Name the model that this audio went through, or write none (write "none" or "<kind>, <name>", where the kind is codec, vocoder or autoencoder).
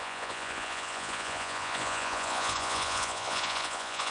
vocoder, Vocos